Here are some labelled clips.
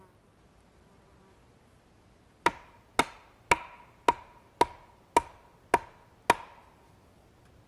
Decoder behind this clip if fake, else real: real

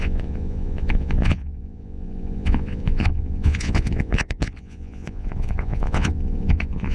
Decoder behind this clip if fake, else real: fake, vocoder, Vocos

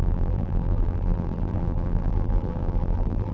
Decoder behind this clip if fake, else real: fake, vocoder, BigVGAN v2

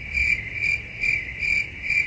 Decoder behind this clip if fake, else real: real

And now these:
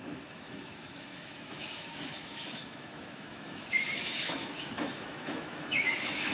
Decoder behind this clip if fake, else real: fake, autoencoder, DAC-VAE